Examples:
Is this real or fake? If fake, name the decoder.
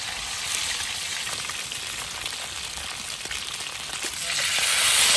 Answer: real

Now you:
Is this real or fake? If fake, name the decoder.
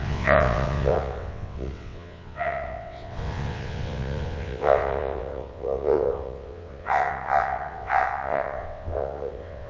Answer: fake, vocoder, WaveNeXt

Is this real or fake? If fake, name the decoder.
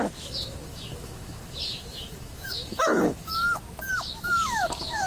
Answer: fake, autoencoder, DAC-VAE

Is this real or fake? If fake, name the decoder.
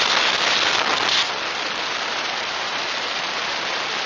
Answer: real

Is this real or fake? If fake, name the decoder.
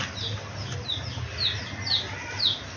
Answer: real